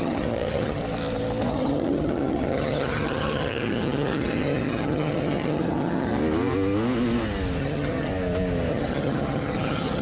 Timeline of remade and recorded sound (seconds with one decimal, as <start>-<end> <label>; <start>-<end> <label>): 0.0-0.8 remade; 0.8-1.5 recorded; 1.5-6.1 remade; 6.1-7.6 recorded; 7.6-8.1 remade; 8.1-8.7 recorded; 8.7-10.0 remade